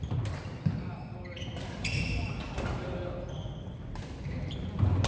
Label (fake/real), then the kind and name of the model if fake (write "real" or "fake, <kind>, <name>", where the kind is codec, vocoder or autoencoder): real